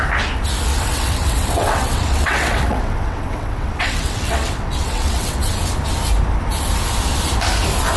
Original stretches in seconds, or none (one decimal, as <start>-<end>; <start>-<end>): 0.0-0.7; 5.5-8.0